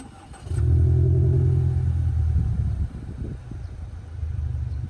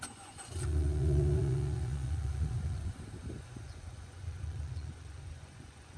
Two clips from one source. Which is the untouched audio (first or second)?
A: first